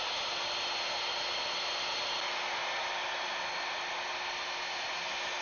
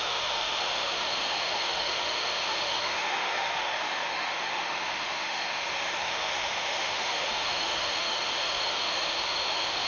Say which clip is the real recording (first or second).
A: first